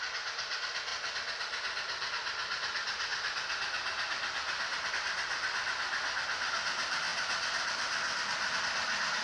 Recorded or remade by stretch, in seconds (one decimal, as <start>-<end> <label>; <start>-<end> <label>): 0.0-9.2 recorded